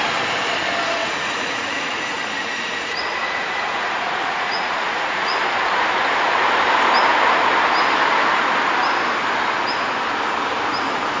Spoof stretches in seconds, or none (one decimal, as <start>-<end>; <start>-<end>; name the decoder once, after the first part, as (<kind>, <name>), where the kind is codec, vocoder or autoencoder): 1.0-5.4 (vocoder, Vocos)